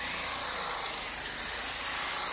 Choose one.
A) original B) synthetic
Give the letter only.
A